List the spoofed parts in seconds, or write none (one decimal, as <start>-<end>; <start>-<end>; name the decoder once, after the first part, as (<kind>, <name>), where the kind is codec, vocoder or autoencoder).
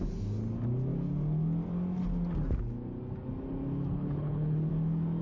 3.8-4.7 (codec, HILCodec)